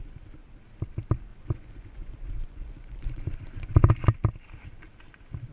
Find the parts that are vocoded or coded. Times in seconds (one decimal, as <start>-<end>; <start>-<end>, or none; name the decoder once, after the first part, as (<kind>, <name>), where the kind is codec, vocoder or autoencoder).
1.3-3.9 (vocoder, Vocos)